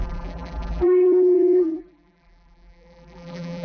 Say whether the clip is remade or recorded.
remade